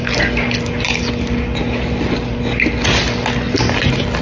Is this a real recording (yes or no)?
yes